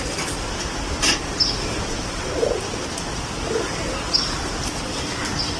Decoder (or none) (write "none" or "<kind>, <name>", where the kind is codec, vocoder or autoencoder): none